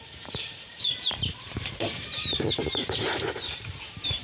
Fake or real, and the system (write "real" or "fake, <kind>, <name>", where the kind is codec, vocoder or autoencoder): fake, vocoder, BigVGAN v2